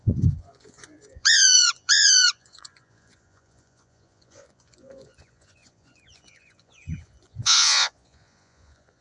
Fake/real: fake